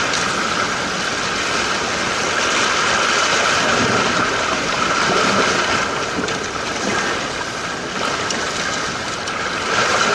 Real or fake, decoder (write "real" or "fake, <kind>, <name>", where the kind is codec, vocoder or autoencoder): real